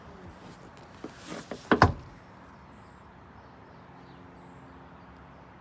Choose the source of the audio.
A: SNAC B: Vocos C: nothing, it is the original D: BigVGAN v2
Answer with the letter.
C